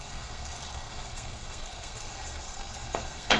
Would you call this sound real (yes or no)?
no